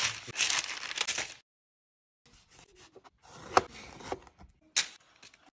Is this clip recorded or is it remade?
recorded